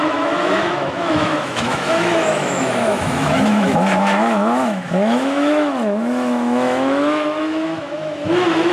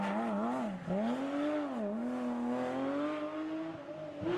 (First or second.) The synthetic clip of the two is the first